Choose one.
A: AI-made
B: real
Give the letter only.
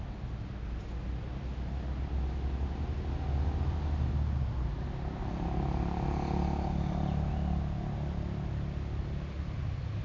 B